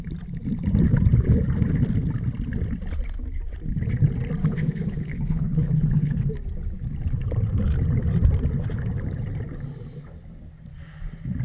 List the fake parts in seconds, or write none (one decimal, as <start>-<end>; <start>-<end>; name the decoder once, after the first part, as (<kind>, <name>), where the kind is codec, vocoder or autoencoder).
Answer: 4.4-6.3 (codec, HILCodec)